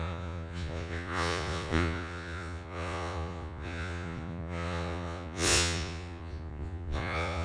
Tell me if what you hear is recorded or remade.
remade